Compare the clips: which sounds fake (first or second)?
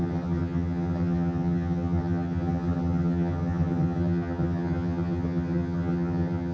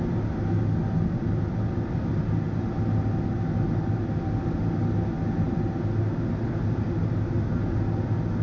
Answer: first